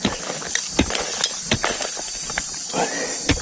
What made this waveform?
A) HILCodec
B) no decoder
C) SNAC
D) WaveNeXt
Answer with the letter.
B